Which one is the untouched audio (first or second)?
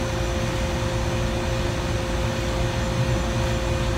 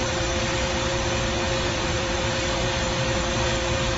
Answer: first